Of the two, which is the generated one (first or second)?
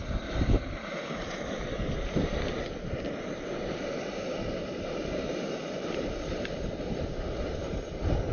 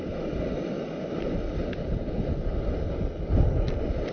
first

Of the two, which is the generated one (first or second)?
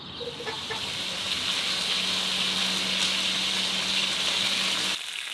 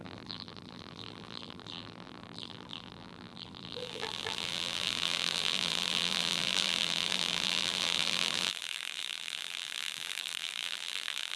second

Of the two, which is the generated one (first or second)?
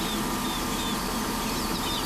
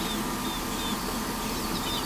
first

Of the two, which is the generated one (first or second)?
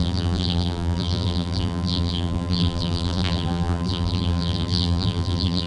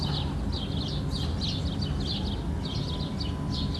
first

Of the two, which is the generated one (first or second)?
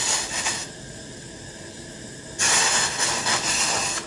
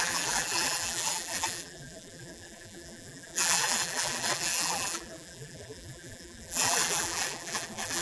second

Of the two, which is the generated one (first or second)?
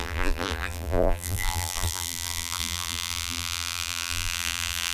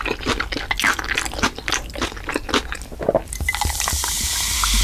first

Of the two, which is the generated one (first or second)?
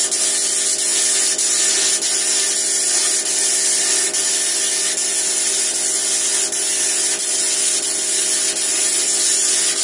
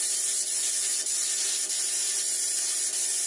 second